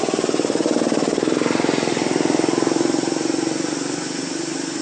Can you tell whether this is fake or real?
real